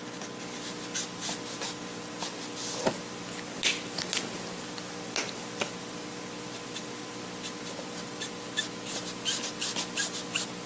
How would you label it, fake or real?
real